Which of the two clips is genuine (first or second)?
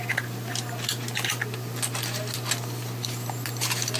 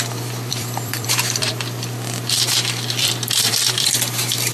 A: first